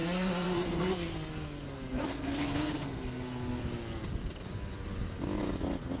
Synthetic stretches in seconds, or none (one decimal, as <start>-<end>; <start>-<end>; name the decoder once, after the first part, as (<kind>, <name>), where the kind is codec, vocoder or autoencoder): 0.0-3.6 (codec, SNAC)